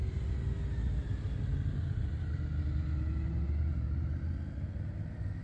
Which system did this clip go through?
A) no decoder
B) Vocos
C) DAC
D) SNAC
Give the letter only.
A